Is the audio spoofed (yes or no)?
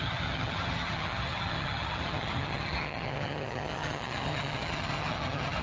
yes